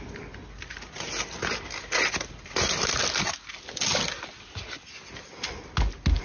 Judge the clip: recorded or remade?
recorded